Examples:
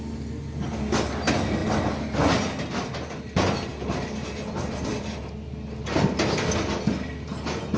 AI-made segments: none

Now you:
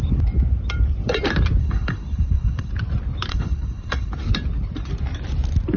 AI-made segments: 1.6-2.7 (codec, HILCodec); 3.3-4.1

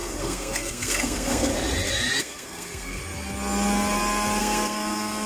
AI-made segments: 0.0-1.5 (codec, SNAC); 2.2-3.0; 4.4-5.3